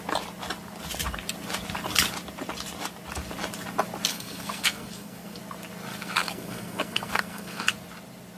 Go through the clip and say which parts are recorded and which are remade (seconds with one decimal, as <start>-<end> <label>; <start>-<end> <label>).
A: 0.0-4.1 recorded; 4.1-5.4 remade; 5.4-5.9 recorded; 5.9-7.7 remade; 7.7-8.4 recorded